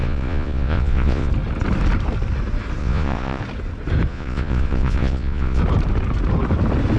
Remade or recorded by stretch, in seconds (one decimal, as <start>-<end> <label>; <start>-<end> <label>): 0.0-1.3 remade; 1.3-2.8 recorded; 2.8-3.4 remade; 3.4-4.1 recorded; 4.1-5.6 remade; 5.6-7.0 recorded